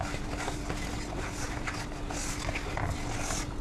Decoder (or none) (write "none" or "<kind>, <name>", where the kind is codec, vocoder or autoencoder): none